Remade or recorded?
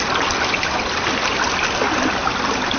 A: recorded